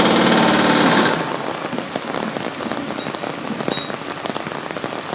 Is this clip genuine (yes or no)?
yes